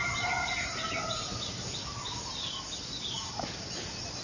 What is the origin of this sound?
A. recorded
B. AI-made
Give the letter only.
A